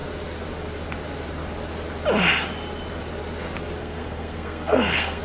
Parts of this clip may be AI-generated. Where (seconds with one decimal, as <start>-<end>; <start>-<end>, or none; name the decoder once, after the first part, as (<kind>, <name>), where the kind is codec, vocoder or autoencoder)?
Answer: 3.8-5.2 (codec, SNAC)